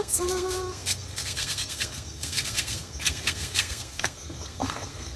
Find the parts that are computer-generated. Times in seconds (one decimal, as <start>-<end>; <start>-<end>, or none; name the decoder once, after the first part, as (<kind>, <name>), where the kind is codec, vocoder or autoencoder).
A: 0.0-5.2 (codec, SNAC)